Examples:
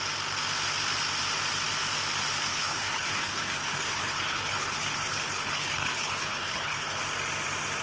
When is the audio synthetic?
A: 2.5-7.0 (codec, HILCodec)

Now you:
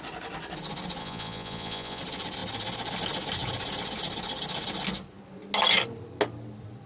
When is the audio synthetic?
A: 1.0-2.0 (vocoder, Vocos)